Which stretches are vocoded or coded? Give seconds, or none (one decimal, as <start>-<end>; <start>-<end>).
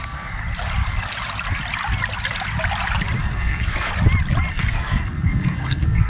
0.0-0.4; 3.2-3.9; 4.5-6.1